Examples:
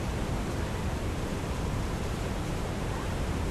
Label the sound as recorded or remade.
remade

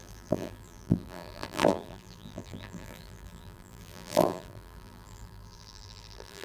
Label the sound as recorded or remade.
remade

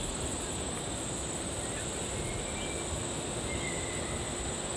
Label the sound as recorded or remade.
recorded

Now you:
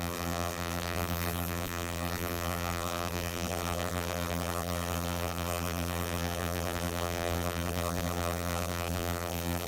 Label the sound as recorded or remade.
remade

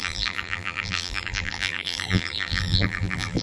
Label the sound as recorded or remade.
remade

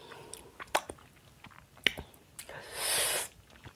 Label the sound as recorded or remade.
recorded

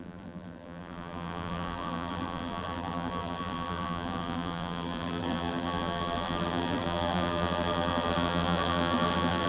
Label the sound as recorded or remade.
remade